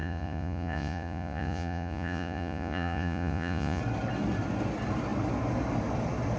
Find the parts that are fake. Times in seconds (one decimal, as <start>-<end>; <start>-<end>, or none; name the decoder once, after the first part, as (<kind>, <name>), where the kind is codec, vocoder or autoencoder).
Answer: 0.0-3.8 (vocoder, Vocos)